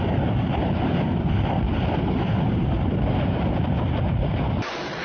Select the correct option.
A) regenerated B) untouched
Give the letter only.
B